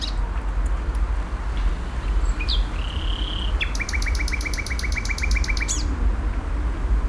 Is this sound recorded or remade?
recorded